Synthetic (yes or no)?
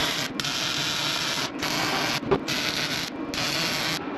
no